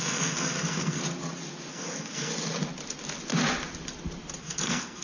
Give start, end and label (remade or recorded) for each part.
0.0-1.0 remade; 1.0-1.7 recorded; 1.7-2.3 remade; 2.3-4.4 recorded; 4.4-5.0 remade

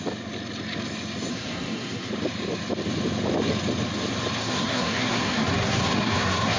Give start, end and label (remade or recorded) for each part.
0.0-1.3 recorded; 1.3-2.1 remade; 2.1-4.4 recorded; 4.4-6.6 remade

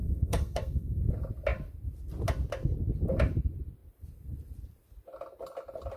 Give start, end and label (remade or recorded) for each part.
0.0-1.0 remade; 1.0-6.0 recorded

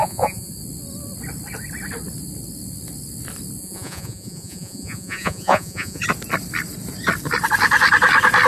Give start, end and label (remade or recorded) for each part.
0.0-0.5 remade; 0.5-3.6 recorded; 3.6-6.0 remade; 6.0-8.5 recorded

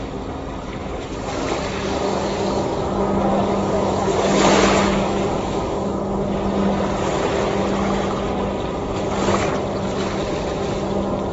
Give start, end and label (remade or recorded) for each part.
0.0-0.8 recorded; 0.8-6.0 remade; 6.0-11.3 recorded

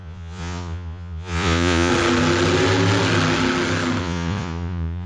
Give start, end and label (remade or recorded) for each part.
0.0-1.9 remade; 1.9-4.0 recorded; 4.0-5.1 remade